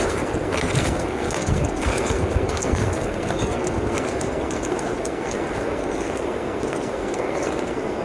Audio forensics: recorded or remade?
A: remade